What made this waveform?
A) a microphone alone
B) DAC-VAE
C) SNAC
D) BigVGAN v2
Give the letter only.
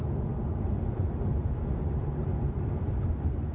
A